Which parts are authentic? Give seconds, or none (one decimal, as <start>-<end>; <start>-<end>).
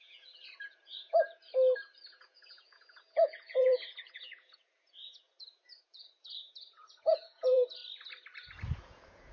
1.5-2.1; 7.8-8.8